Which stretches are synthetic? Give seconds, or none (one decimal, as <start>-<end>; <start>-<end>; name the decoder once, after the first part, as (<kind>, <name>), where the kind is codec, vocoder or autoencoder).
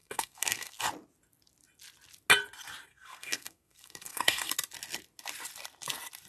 0.0-0.8 (codec, SNAC); 2.9-4.5